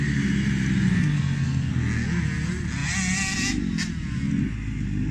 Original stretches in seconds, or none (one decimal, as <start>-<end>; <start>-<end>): 0.0-0.9; 1.7-5.1